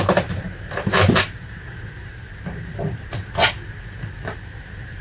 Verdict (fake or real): fake